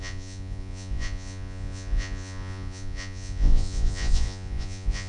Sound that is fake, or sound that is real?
fake